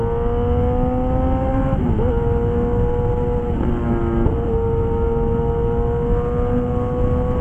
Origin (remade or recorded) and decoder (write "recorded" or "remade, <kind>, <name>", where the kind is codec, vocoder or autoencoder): recorded